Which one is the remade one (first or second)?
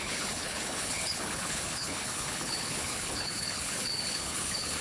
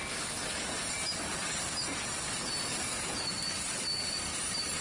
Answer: first